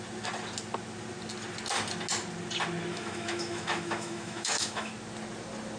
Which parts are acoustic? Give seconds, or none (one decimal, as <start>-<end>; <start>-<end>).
0.0-2.9; 4.9-5.8